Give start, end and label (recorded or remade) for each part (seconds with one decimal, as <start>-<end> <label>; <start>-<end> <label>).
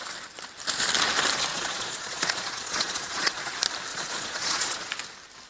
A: 0.0-1.5 recorded; 1.5-3.5 remade; 3.5-3.9 recorded; 3.9-4.9 remade; 4.9-5.5 recorded